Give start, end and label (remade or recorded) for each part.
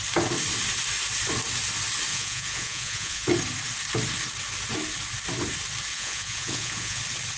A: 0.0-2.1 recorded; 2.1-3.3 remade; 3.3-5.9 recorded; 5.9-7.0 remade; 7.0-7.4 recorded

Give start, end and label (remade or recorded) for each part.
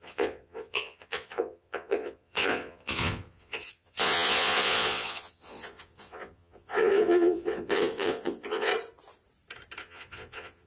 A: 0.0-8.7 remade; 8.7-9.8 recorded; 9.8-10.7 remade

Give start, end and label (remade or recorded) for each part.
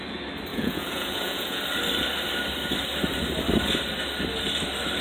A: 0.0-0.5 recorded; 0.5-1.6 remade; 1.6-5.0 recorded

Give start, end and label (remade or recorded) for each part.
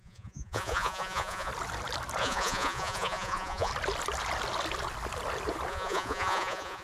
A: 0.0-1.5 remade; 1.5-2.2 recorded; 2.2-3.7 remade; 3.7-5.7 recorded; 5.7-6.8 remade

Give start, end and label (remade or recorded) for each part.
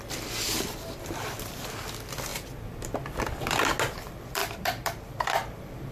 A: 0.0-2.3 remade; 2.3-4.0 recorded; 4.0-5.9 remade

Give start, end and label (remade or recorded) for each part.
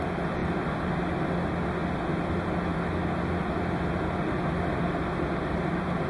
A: 0.0-6.1 recorded